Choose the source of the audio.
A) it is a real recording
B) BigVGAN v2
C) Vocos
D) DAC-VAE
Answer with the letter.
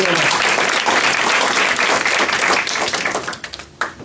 B